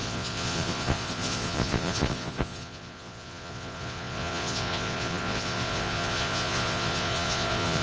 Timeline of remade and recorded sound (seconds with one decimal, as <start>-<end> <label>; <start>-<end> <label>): 0.0-7.8 remade

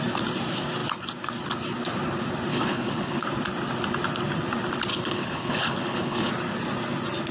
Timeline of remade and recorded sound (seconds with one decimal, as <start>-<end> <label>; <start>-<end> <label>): 0.0-2.5 recorded; 2.5-3.2 remade; 3.2-4.9 recorded; 4.9-6.3 remade; 6.3-7.3 recorded